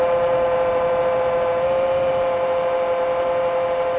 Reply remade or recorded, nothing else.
recorded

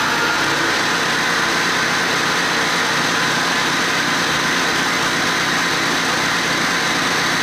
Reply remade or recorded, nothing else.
recorded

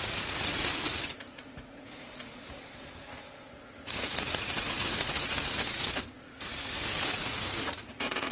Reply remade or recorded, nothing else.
remade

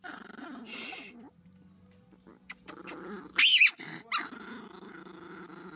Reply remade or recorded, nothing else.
recorded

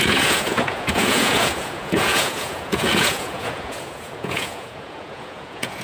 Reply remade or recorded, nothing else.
remade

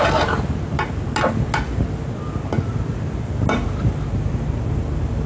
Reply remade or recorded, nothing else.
recorded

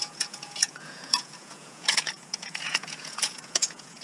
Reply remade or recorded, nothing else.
remade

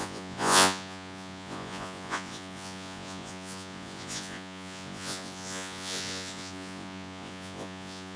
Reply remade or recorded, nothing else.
remade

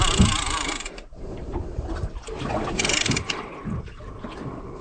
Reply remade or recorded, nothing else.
recorded